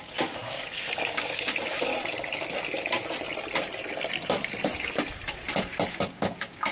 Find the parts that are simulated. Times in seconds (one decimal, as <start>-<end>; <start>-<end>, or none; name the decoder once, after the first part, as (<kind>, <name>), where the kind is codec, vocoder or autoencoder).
0.0-1.9 (codec, DAC); 5.9-6.7